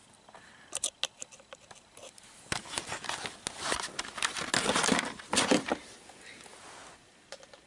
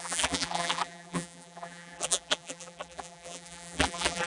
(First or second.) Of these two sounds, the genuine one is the first